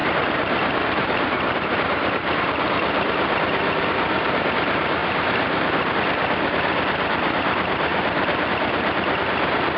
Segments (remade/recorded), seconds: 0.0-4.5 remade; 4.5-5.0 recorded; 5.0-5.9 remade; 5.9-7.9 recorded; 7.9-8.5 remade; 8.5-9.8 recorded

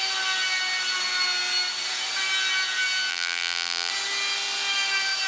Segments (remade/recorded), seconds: 0.0-3.1 recorded; 3.1-3.9 remade; 3.9-5.3 recorded